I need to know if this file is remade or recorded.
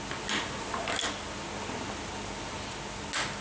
recorded